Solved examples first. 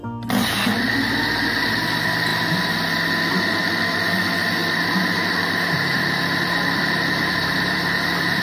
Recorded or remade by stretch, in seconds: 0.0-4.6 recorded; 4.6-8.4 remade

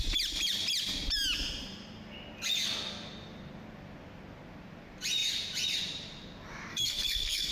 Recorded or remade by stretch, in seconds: 0.0-6.7 recorded; 6.7-7.5 remade